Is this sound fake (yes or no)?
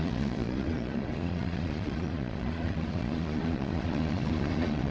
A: yes